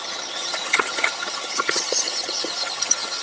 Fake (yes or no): yes